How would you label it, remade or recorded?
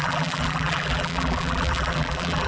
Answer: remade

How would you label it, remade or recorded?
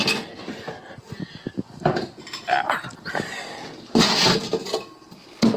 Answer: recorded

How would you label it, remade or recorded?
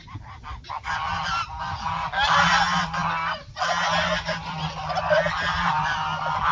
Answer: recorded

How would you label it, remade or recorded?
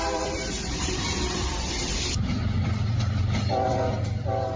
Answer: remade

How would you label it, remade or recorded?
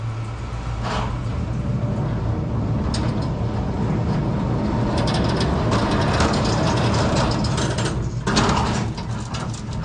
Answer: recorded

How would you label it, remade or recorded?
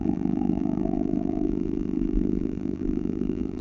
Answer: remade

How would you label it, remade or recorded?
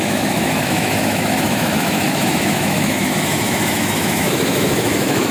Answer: remade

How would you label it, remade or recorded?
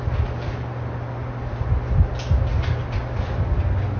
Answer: recorded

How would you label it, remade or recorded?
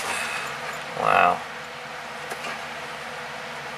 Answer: recorded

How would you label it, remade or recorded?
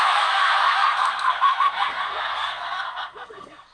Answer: remade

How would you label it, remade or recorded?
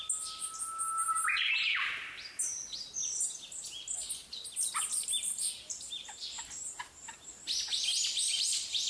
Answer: recorded